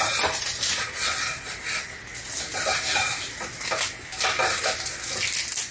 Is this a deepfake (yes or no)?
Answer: no